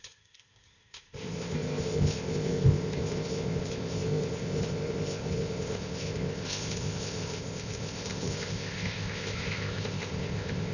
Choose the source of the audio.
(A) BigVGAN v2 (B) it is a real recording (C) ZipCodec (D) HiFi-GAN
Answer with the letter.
C